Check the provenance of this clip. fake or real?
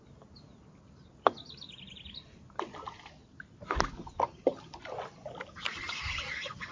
real